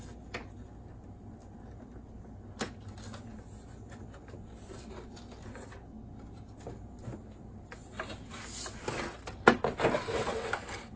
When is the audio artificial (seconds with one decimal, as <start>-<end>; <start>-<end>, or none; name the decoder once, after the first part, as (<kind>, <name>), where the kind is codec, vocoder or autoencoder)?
none